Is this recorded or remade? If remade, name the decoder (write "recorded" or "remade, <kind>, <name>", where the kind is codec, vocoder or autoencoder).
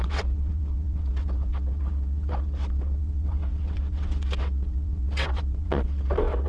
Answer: remade, vocoder, WaveNeXt